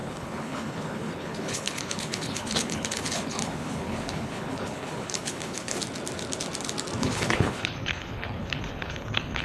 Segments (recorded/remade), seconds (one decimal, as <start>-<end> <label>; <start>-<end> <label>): 0.0-5.8 remade; 5.8-7.0 recorded; 7.0-9.4 remade